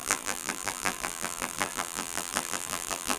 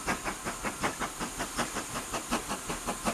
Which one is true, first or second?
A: second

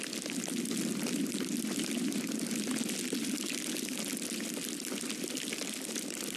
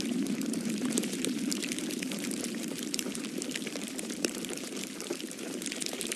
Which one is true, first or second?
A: first